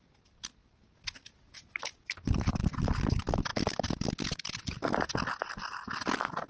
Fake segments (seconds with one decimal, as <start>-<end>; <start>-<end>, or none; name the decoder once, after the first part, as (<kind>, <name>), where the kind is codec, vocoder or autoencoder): none